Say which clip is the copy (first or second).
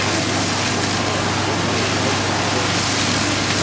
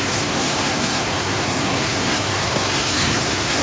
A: second